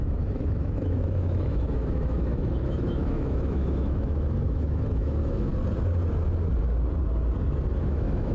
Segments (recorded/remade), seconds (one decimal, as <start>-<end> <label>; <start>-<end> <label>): 0.0-5.5 remade; 5.5-7.8 recorded; 7.8-8.3 remade